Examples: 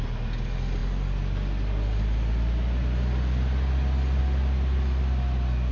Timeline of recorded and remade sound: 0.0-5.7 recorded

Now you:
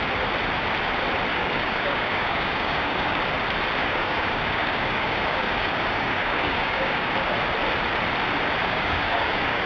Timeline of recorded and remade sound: 0.0-1.3 recorded; 1.3-3.2 remade; 3.2-3.8 recorded; 3.8-7.1 remade; 7.1-8.6 recorded; 8.6-9.7 remade

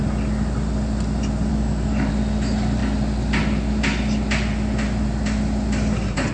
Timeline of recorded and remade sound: 0.0-1.5 recorded; 1.5-2.1 remade; 2.1-6.3 recorded

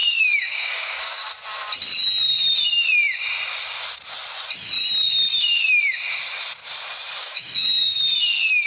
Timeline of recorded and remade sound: 0.0-1.3 remade; 1.3-7.2 recorded; 7.2-8.0 remade; 8.0-8.7 recorded